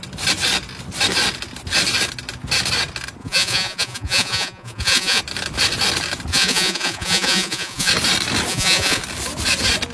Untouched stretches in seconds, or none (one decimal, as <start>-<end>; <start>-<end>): 0.0-3.2; 5.2-6.3; 7.9-8.5; 9.0-9.9